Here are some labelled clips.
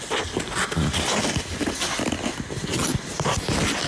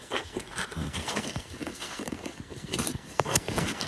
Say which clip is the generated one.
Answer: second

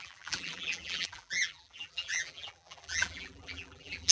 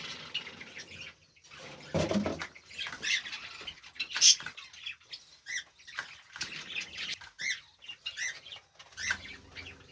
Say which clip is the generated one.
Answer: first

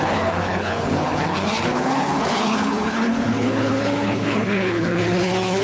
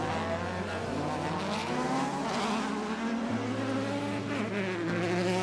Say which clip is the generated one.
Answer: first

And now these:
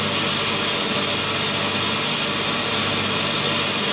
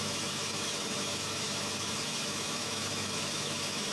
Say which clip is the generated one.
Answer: second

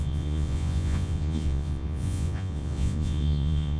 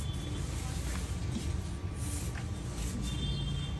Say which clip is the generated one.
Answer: first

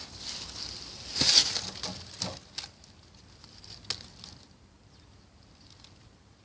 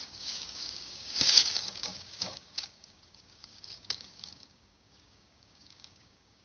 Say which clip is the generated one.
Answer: second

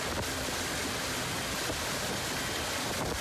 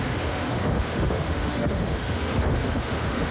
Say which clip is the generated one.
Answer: second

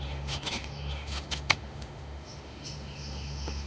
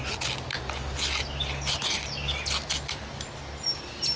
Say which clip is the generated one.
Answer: first